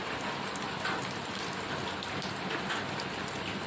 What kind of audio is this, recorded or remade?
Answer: recorded